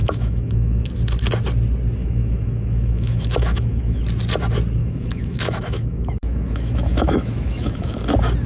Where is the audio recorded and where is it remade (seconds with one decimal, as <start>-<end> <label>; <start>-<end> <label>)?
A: 0.0-0.9 remade; 0.9-2.0 recorded; 2.0-4.0 remade; 4.0-4.8 recorded; 4.8-8.0 remade; 8.0-8.5 recorded